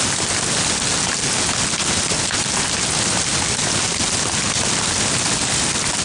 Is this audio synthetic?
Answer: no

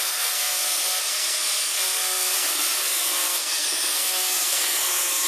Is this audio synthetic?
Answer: yes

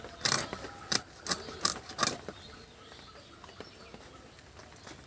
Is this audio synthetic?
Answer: no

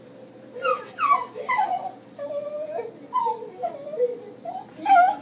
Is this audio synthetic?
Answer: no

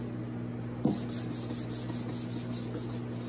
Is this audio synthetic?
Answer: no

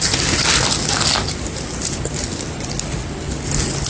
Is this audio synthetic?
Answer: no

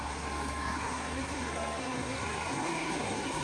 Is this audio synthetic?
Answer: yes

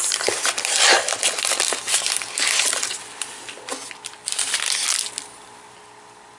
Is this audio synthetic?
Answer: no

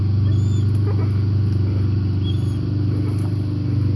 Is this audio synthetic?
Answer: no